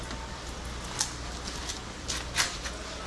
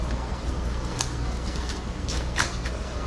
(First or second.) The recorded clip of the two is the first